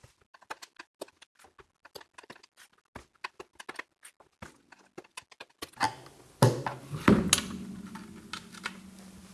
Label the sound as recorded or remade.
recorded